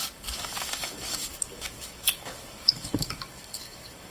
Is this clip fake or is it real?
fake